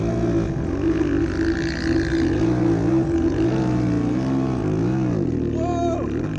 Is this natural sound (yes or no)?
yes